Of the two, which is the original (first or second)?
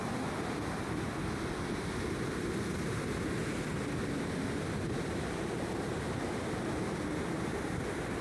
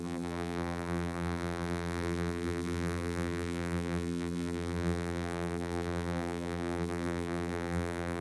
first